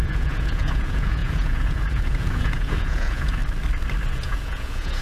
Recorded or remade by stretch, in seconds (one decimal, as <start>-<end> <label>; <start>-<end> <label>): 0.0-3.4 remade; 3.4-4.1 recorded; 4.1-5.0 remade